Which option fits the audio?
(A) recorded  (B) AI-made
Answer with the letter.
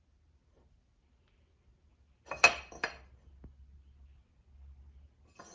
A